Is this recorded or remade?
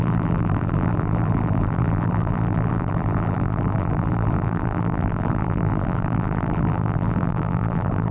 remade